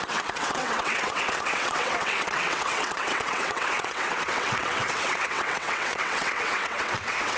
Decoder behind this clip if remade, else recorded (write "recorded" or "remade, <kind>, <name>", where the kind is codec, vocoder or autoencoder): remade, vocoder, WaveNeXt